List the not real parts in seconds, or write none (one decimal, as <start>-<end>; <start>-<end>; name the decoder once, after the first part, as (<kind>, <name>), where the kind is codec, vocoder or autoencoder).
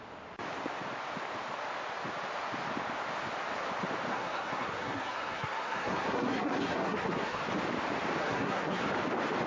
4.1-7.4 (codec, SNAC); 8.2-8.8